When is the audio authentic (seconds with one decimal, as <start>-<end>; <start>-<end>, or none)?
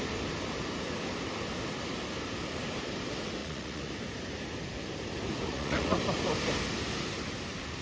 0.0-3.4; 3.9-5.5; 6.0-7.8